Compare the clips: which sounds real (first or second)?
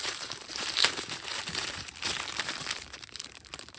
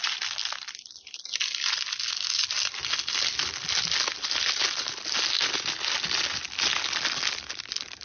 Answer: second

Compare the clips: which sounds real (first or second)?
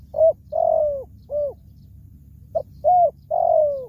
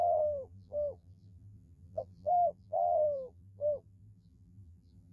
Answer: first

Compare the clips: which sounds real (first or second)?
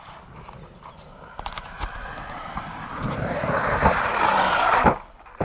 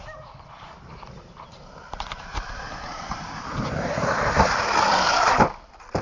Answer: first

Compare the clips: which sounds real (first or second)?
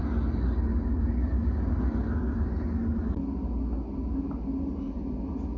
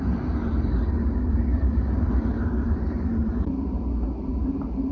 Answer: first